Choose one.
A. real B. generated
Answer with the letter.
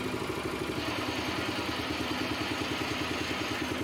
A